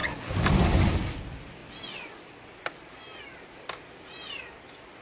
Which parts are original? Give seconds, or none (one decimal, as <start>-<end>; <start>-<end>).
0.0-5.0